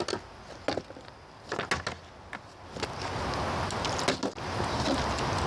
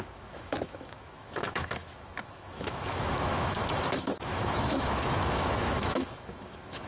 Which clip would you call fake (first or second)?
second